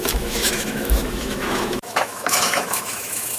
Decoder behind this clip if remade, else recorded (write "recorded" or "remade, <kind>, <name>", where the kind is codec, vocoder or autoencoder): remade, autoencoder, DAC-VAE